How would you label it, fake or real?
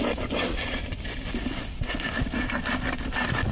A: real